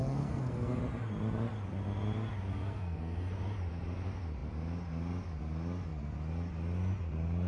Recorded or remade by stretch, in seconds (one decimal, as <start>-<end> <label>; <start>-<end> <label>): 0.0-0.8 remade; 0.8-2.5 recorded; 2.5-3.3 remade; 3.3-7.5 recorded